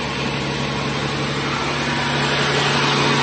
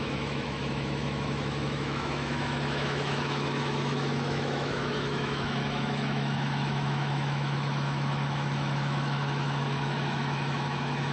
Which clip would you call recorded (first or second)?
first